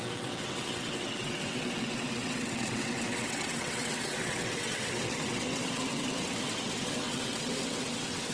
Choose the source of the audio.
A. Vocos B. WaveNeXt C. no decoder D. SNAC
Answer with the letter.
B